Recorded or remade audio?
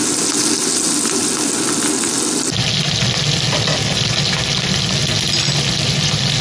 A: recorded